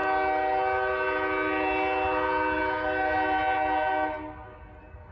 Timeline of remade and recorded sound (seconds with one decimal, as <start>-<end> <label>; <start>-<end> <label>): 0.0-5.1 recorded

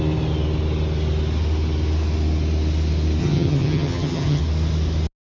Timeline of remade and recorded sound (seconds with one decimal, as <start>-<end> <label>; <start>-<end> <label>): 0.0-3.2 recorded; 3.2-4.4 remade; 4.4-5.4 recorded

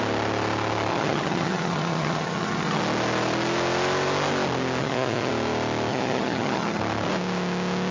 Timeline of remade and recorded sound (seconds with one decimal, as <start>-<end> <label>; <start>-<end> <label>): 0.0-0.9 recorded; 0.9-2.8 remade; 2.8-4.8 recorded; 4.8-5.3 remade; 5.3-5.9 recorded; 5.9-6.8 remade; 6.8-7.9 recorded

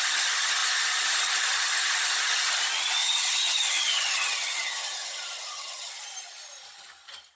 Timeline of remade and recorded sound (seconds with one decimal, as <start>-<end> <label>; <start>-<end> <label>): 0.0-3.0 recorded; 3.0-5.9 remade; 5.9-7.4 recorded

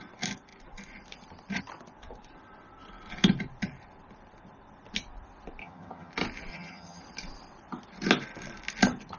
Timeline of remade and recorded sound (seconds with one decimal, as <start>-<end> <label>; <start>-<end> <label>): 0.0-5.6 recorded; 5.6-6.1 remade; 6.1-6.5 recorded; 6.5-7.0 remade; 7.0-9.2 recorded

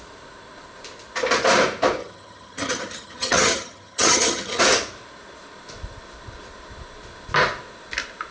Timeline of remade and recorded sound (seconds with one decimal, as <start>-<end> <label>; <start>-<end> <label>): 0.0-2.0 recorded; 2.0-4.6 remade; 4.6-8.3 recorded

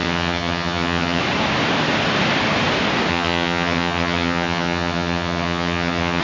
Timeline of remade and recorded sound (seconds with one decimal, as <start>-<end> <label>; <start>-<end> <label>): 0.0-1.2 remade; 1.2-3.1 recorded; 3.1-6.2 remade

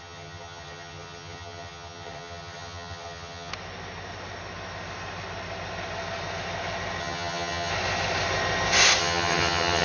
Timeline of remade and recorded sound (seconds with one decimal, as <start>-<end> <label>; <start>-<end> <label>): 0.0-3.5 remade; 3.5-7.0 recorded; 7.0-7.7 remade; 7.7-9.0 recorded; 9.0-9.8 remade